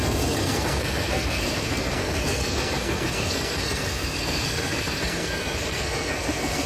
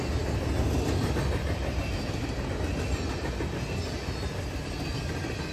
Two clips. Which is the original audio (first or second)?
second